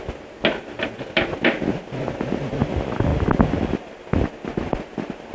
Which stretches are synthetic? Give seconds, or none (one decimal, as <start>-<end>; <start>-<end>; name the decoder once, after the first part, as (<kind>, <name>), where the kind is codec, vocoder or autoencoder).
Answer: none